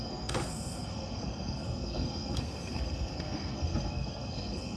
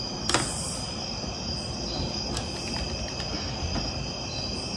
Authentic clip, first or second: second